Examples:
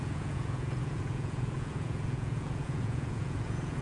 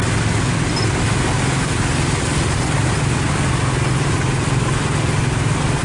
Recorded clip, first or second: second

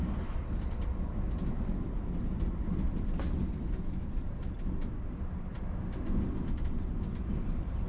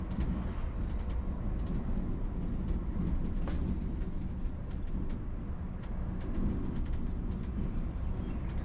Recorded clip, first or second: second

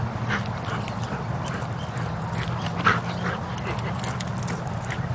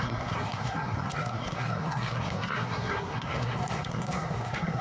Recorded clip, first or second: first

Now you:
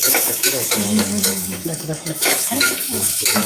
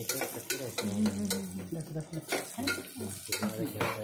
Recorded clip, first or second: second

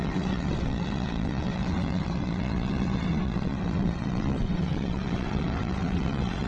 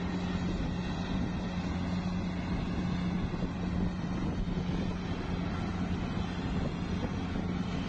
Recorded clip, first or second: second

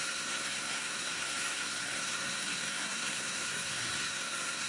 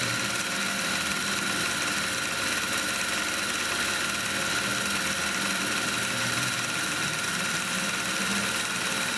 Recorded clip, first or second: second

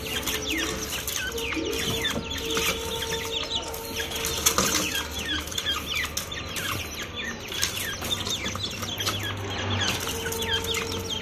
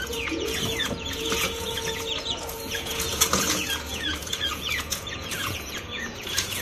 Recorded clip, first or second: first